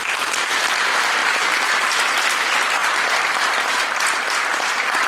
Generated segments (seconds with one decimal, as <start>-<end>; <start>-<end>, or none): 0.0-5.1